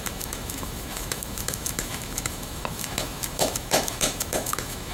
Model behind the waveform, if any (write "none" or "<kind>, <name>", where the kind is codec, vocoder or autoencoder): autoencoder, DAC-VAE